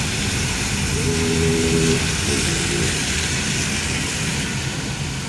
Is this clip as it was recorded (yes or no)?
yes